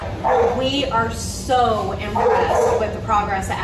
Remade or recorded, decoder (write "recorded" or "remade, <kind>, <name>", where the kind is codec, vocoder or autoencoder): recorded